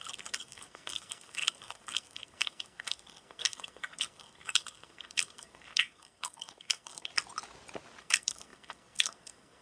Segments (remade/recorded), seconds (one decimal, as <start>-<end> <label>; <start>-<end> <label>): 0.0-7.1 remade; 7.1-8.0 recorded; 8.0-9.6 remade